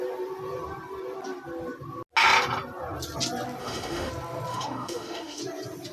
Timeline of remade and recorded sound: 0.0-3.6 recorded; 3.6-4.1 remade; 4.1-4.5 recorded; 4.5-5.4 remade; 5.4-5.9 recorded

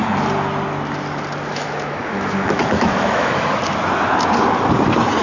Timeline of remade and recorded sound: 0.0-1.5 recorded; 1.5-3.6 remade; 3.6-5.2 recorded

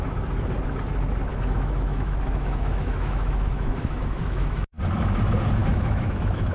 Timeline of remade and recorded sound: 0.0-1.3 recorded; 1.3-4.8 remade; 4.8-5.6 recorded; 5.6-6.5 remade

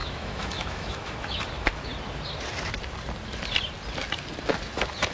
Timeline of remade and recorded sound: 0.0-1.4 remade; 1.4-5.1 recorded

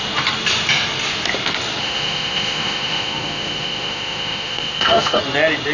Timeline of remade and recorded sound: 0.0-1.8 recorded; 1.8-5.2 remade; 5.2-5.7 recorded